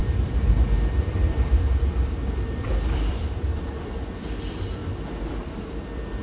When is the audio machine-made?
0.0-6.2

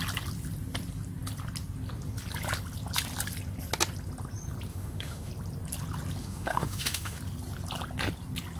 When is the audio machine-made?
4.7-5.3; 6.2-7.2